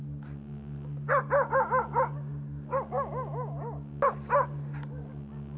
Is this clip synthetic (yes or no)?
no